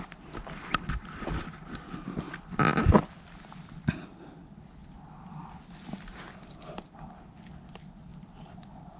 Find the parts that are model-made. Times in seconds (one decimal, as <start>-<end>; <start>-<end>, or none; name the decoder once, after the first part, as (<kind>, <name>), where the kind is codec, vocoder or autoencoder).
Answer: none